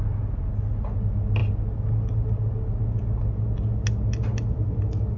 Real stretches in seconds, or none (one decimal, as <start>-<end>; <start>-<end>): 0.0-5.2